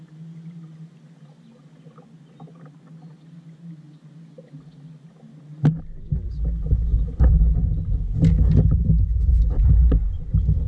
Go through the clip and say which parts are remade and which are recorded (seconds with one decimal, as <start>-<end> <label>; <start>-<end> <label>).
0.0-10.7 recorded